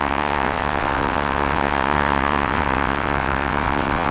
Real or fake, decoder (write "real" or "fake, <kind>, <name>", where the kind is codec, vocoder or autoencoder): fake, vocoder, WaveNeXt